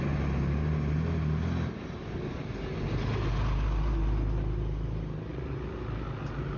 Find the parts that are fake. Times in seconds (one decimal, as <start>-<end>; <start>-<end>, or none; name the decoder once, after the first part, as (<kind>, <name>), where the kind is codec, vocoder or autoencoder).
none